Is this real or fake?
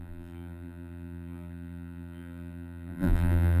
fake